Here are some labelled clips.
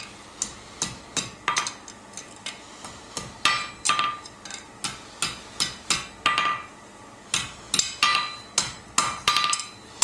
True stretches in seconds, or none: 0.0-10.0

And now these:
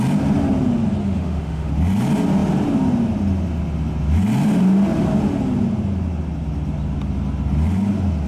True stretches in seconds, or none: 0.0-1.0; 1.7-8.3

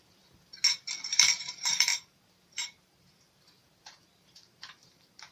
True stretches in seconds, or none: 0.5-1.1

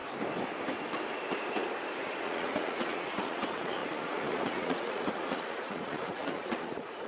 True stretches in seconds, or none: 0.0-2.2

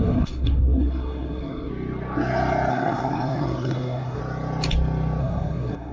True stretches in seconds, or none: 1.7-2.7; 4.2-5.2

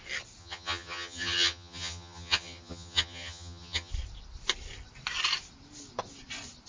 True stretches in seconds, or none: 0.0-0.4; 3.9-6.7

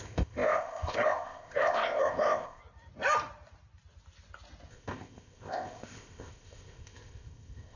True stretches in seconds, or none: 2.6-4.7

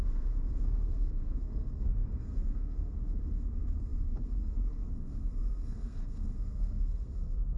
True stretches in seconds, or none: none